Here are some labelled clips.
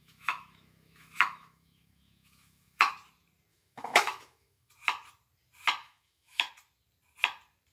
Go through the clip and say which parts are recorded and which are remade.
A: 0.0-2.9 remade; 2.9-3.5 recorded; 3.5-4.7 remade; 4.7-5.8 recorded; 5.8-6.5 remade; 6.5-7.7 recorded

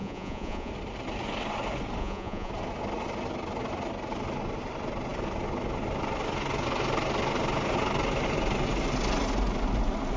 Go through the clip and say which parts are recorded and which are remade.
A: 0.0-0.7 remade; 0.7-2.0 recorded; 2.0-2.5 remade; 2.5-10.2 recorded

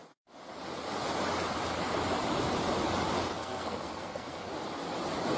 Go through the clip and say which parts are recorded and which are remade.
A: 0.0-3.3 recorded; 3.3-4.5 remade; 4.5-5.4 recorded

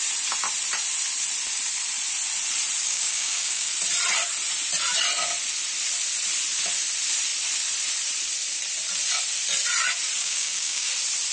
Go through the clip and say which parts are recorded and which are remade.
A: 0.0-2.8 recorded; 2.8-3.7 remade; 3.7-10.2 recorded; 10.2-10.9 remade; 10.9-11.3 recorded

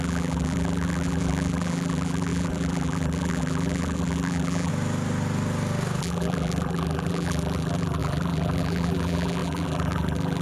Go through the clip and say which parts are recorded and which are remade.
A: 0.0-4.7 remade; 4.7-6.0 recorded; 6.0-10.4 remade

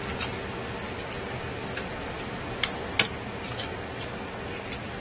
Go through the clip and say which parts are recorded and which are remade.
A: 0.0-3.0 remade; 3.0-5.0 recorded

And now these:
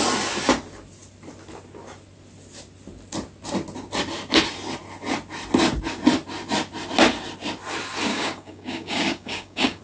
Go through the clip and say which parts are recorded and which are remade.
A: 0.0-8.1 recorded; 8.1-9.8 remade